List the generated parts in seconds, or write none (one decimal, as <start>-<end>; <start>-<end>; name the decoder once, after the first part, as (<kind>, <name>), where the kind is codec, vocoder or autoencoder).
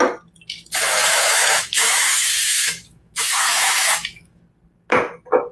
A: 1.1-4.4 (autoencoder, DAC-VAE)